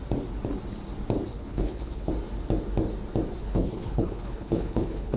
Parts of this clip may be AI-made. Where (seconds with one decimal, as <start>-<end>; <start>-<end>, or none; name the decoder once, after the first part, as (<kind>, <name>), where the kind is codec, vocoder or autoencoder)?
1.3-2.1 (codec, HILCodec); 3.4-5.2